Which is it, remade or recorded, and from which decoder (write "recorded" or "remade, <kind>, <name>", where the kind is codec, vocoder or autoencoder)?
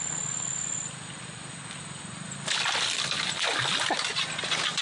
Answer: recorded